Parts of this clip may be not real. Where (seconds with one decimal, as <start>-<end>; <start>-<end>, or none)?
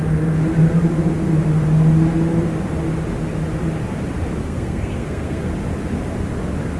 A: 4.4-5.5